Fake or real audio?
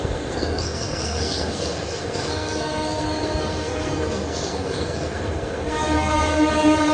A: fake